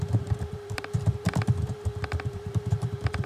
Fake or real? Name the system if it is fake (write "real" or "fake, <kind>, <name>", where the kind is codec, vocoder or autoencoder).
fake, vocoder, BigVGAN v2